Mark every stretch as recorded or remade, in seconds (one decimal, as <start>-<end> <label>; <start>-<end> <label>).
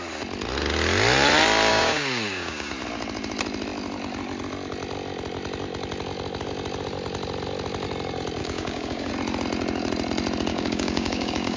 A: 0.0-1.7 recorded; 1.7-2.7 remade; 2.7-8.4 recorded; 8.4-9.1 remade; 9.1-10.5 recorded; 10.5-11.6 remade